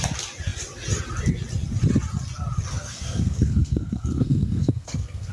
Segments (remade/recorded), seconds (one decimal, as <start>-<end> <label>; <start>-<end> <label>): 0.0-2.7 recorded; 2.7-5.3 remade